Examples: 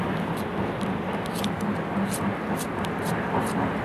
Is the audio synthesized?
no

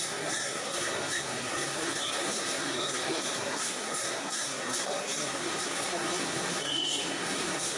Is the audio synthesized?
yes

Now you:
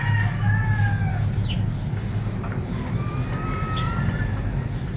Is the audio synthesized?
no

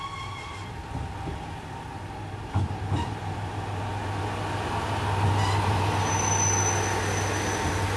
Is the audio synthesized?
no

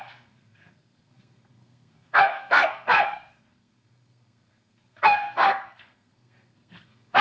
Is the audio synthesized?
yes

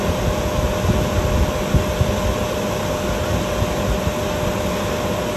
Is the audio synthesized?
no